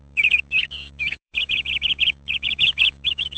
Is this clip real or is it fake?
fake